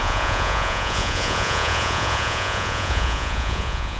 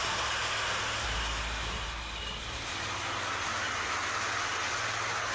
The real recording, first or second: second